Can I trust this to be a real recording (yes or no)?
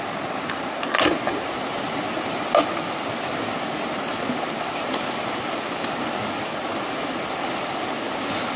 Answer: yes